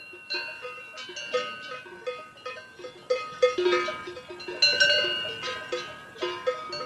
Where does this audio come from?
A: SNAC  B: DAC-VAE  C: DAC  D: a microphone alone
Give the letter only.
D